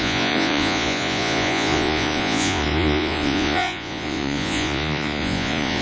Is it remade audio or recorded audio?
remade